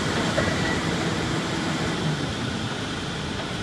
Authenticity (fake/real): fake